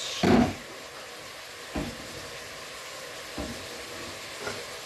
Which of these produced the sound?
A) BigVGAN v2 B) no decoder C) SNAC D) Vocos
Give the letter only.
B